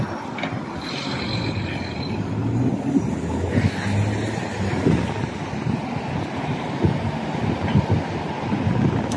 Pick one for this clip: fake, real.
real